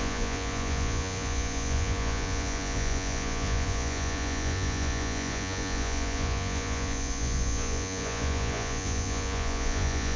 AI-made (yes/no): yes